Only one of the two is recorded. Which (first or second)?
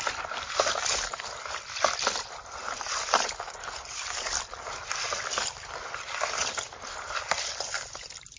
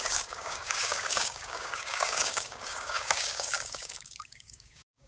first